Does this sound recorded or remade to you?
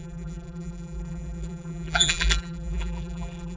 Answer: remade